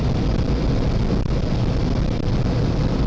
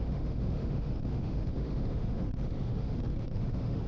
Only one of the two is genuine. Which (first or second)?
first